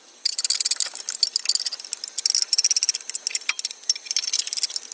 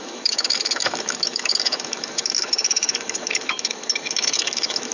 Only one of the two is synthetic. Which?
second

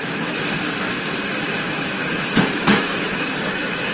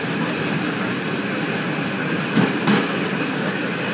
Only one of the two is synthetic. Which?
first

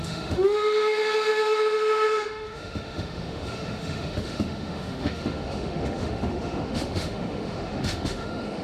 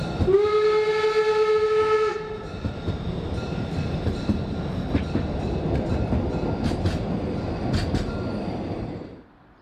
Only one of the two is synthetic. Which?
first